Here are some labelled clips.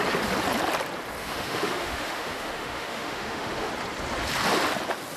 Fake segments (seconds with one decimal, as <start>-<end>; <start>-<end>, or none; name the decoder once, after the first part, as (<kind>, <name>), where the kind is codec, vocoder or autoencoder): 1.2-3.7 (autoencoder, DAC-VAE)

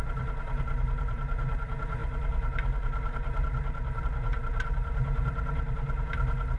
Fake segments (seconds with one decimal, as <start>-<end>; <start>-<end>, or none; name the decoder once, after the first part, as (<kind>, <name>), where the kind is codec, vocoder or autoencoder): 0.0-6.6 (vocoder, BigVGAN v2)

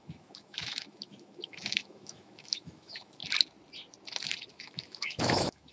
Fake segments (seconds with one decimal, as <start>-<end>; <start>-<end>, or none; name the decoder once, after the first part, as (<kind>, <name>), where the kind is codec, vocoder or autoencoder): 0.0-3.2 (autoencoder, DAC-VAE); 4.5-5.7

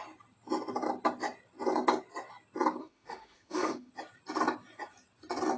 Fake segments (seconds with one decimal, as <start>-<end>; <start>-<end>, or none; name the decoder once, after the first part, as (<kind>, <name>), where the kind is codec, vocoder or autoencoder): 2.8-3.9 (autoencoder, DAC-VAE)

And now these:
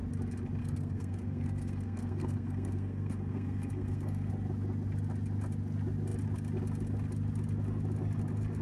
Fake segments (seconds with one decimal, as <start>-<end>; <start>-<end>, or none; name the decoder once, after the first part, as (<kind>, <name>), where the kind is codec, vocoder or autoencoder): 0.6-4.3 (codec, SNAC)

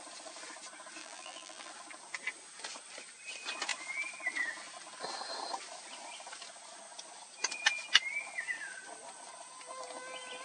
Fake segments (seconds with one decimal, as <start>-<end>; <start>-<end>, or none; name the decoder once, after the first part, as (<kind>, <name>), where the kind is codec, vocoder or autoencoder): 1.0-1.7 (vocoder, BigVGAN v2)

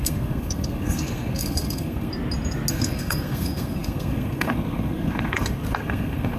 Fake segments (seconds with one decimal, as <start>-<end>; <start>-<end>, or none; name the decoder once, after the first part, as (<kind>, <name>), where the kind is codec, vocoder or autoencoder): 0.0-2.1 (codec, SNAC); 2.7-6.4

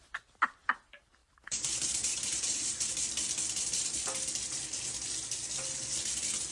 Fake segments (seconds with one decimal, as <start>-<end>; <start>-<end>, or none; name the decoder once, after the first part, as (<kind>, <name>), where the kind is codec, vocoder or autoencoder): 1.2-2.9 (vocoder, BigVGAN v2)